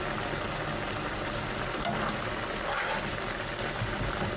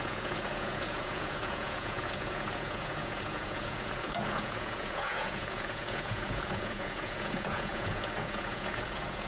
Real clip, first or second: first